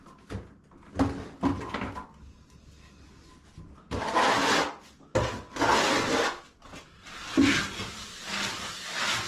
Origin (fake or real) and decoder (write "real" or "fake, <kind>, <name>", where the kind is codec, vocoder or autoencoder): real